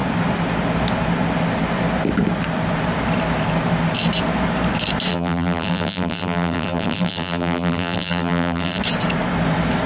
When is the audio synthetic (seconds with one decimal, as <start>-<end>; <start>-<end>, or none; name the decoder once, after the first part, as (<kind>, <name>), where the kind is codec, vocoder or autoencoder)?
5.1-8.8 (vocoder, BigVGAN v2)